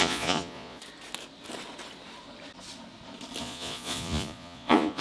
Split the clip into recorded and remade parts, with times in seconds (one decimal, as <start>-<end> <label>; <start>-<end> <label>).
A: 0.0-0.8 remade; 0.8-3.4 recorded; 3.4-5.0 remade